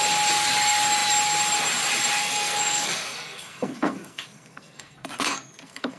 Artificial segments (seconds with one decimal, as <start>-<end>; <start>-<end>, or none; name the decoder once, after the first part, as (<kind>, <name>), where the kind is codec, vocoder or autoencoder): 2.2-6.0 (codec, SNAC)